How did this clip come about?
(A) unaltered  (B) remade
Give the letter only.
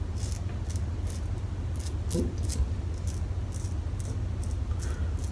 A